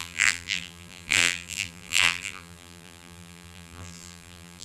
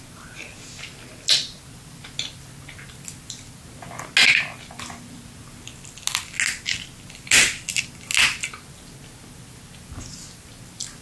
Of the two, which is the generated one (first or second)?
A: first